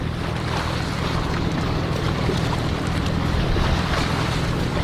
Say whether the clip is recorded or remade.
remade